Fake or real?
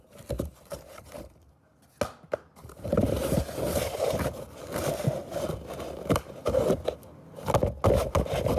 real